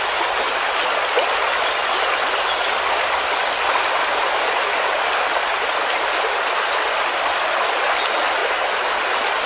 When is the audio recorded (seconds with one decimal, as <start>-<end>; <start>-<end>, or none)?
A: 0.0-8.4; 8.9-9.5